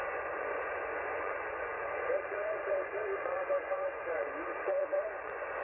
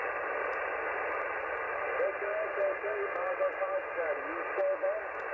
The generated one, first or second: first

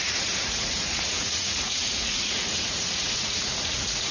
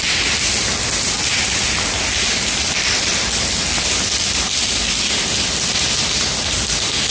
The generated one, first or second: first